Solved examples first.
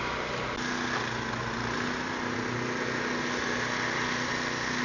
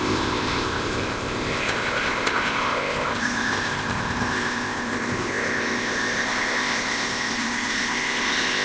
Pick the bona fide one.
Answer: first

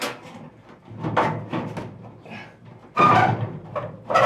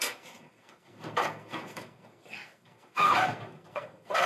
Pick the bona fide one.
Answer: first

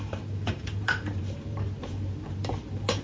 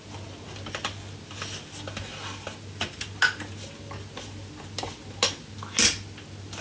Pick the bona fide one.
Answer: second